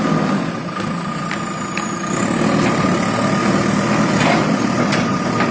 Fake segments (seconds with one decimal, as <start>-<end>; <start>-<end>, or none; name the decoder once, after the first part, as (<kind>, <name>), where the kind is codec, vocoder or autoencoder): none

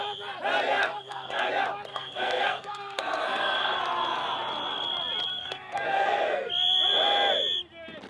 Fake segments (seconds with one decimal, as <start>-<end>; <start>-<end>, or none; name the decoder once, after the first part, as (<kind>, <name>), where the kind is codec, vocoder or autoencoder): 0.8-1.5 (codec, SNAC); 1.9-3.8; 5.3-6.5

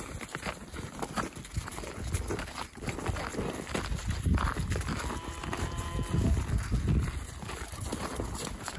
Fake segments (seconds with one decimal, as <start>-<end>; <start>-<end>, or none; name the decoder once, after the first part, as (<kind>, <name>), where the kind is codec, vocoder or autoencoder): none

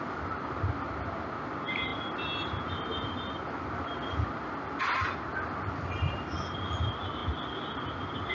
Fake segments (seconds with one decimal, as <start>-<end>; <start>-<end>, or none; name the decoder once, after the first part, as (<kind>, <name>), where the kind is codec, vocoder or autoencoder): none

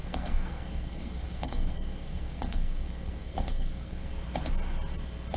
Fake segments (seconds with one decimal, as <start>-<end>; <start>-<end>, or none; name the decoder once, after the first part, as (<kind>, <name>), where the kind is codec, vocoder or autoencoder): 0.0-4.1 (codec, SNAC)

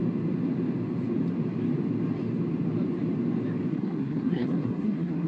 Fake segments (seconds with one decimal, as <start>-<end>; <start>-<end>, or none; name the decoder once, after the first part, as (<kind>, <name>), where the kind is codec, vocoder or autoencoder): 3.7-5.3 (codec, SNAC)

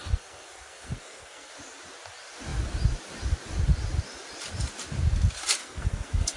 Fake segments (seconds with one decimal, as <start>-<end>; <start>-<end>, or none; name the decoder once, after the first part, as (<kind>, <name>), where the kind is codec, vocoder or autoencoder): 0.0-1.5 (codec, SNAC); 5.6-6.4

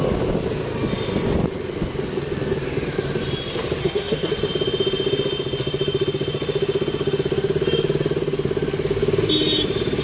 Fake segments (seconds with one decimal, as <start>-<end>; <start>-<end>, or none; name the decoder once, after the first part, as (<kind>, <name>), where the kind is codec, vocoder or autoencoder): 3.8-4.3 (codec, SNAC)